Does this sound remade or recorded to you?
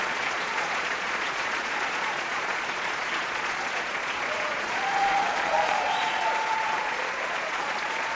remade